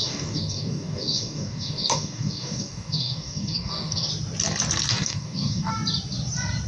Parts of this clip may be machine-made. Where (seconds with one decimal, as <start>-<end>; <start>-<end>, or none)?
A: 0.0-4.1; 4.9-5.7